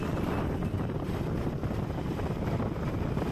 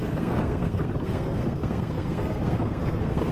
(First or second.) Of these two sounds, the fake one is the second